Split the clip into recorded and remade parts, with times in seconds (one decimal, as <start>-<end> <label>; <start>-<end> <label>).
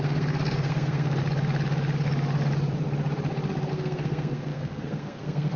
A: 0.0-1.2 remade; 1.2-3.7 recorded; 3.7-5.6 remade